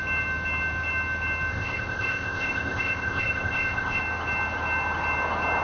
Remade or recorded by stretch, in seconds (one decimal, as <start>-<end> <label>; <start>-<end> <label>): 0.0-1.5 recorded; 1.5-4.0 remade; 4.0-5.6 recorded